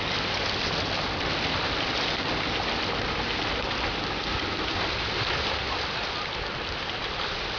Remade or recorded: recorded